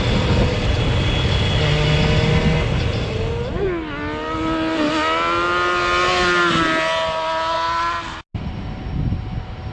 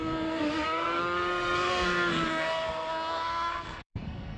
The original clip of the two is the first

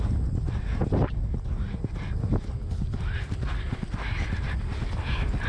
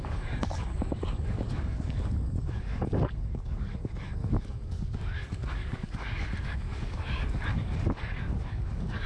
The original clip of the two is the first